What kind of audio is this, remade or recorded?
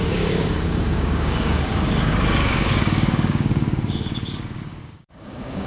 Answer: remade